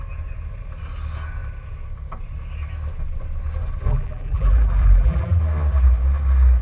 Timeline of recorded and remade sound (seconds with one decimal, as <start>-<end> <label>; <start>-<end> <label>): 0.0-3.9 recorded; 3.9-5.4 remade; 5.4-6.6 recorded